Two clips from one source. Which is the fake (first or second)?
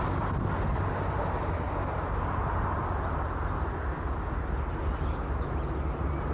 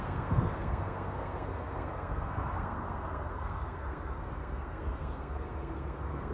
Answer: second